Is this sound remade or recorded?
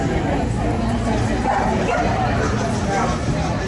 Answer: recorded